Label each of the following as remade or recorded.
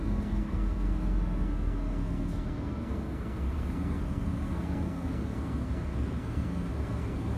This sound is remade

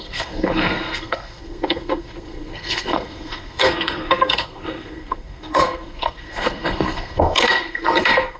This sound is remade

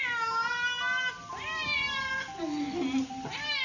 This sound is recorded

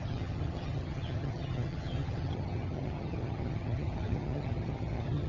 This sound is remade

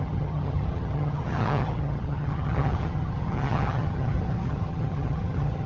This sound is remade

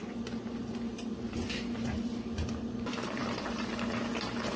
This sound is remade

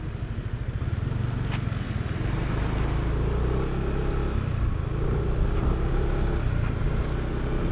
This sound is recorded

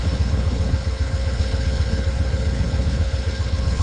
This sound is remade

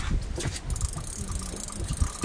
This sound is recorded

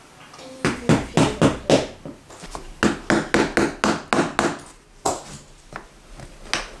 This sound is recorded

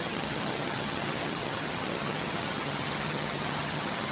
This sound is remade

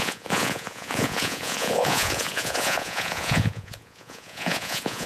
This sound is remade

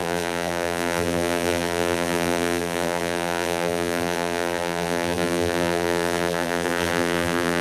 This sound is remade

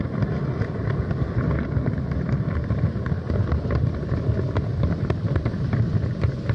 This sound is recorded